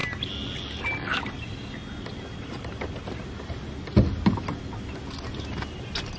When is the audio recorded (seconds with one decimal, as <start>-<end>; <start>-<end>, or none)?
0.0-6.2